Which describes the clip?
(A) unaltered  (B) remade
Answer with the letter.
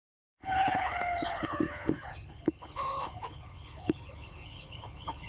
B